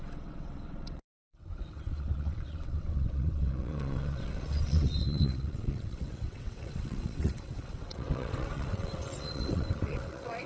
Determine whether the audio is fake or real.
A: fake